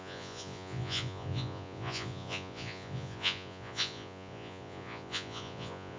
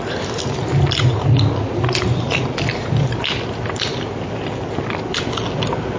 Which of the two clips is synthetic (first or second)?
first